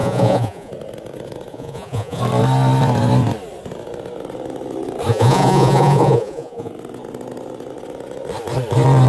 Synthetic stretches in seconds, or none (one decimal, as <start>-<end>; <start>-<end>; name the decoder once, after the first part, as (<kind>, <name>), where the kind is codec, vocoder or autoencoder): 0.0-0.7 (vocoder, Vocos); 1.5-2.2; 5.1-6.7